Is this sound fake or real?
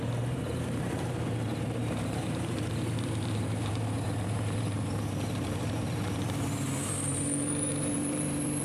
fake